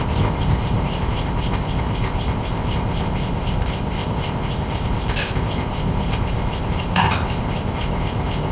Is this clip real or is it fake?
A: fake